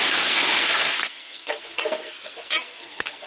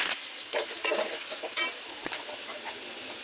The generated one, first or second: first